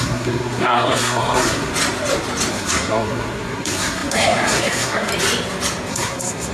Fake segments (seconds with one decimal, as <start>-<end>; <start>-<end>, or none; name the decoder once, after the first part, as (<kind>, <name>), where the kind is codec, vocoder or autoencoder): 0.0-1.7 (codec, SNAC); 2.5-5.1; 5.9-6.5